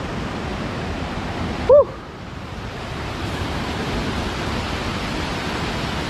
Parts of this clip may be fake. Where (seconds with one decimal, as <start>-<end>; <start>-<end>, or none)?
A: 0.5-4.2